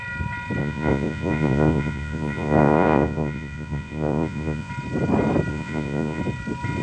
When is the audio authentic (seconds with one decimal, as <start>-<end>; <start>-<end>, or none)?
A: 0.0-0.6; 4.7-5.5; 6.2-6.8